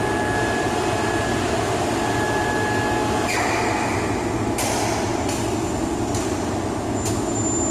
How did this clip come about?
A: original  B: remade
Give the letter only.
A